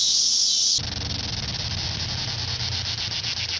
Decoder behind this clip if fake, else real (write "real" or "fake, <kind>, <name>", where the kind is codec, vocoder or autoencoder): real